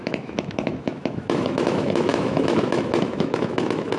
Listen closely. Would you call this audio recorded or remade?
remade